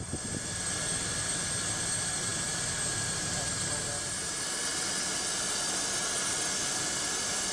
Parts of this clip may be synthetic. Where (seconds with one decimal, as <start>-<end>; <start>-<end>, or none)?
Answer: none